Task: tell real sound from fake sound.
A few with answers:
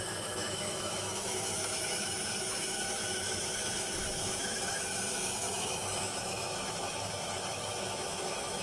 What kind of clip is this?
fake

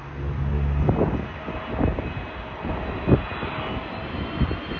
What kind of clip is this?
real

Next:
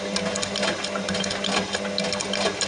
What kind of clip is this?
real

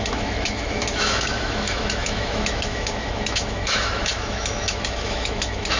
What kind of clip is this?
fake